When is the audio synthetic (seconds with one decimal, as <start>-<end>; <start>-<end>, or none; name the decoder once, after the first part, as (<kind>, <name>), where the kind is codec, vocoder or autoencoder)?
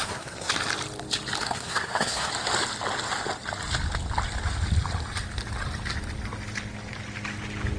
0.0-0.5 (codec, SNAC); 1.4-2.3